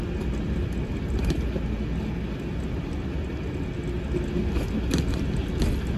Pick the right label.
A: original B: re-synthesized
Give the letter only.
A